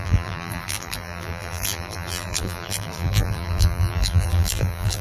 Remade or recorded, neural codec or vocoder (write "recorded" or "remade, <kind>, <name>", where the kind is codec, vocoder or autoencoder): remade, vocoder, BigVGAN v2